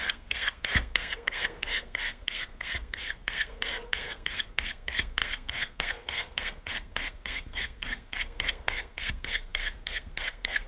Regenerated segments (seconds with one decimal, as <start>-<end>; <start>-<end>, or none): 0.0-10.7